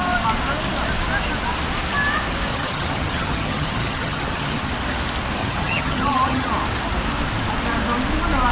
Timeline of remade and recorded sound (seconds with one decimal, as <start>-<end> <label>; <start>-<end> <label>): 0.0-2.5 recorded; 2.5-4.7 remade; 4.7-5.4 recorded; 5.4-6.5 remade; 6.5-8.5 recorded